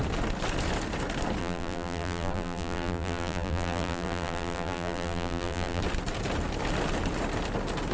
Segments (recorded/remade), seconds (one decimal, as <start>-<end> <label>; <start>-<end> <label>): 0.0-1.4 recorded; 1.4-5.8 remade; 5.8-7.9 recorded

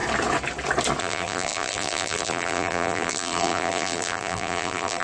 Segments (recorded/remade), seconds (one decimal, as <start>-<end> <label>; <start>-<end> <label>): 0.0-1.0 recorded; 1.0-5.0 remade

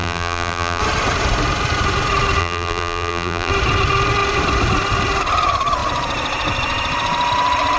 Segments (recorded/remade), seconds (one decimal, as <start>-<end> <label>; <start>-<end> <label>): 0.0-0.8 remade; 0.8-2.4 recorded; 2.4-3.5 remade; 3.5-7.8 recorded